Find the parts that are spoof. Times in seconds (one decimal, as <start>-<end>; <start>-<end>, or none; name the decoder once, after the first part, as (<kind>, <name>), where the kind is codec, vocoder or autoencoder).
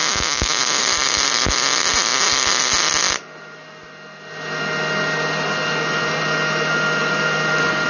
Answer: 0.0-0.8 (autoencoder, DAC-VAE)